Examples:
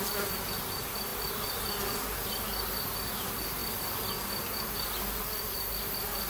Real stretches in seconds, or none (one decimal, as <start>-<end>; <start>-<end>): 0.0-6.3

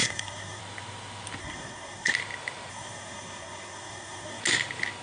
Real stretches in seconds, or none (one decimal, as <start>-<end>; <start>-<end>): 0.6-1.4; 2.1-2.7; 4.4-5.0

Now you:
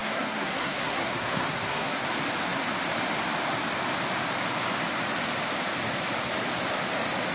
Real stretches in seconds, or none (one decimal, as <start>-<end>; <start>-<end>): 2.1-7.3

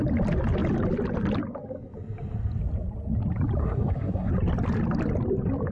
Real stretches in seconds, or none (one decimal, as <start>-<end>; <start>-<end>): 0.0-3.6; 4.3-5.7

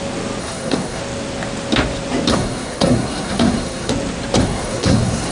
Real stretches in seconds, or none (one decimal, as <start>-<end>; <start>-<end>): 0.0-0.4; 1.0-2.3; 3.9-4.4

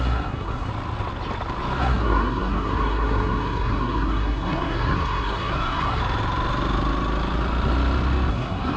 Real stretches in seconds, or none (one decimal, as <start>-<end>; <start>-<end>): 0.7-1.8; 6.0-8.3

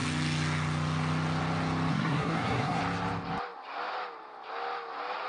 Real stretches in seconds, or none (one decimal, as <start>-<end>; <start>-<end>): 0.0-1.9; 2.8-5.3

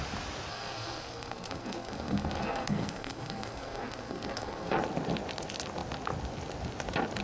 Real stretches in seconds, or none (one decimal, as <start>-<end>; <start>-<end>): 0.0-0.5; 4.8-7.2